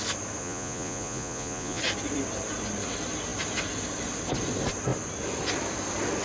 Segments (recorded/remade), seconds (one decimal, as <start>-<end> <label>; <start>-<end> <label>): 0.0-0.4 recorded; 0.4-1.8 remade; 1.8-6.2 recorded